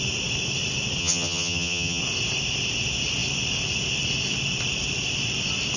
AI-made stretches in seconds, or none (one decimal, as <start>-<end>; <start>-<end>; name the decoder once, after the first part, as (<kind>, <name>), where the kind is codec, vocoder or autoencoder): 1.0-2.0 (vocoder, HiFi-GAN)